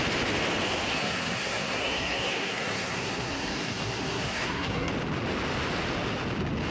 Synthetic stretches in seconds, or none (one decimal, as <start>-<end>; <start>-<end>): 0.9-4.9